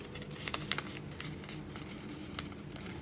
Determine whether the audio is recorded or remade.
recorded